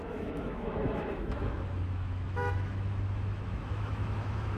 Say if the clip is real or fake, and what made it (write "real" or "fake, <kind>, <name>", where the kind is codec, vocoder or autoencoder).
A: fake, autoencoder, DAC-VAE